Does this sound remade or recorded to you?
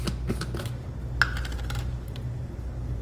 recorded